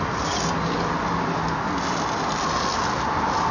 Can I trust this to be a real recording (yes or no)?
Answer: yes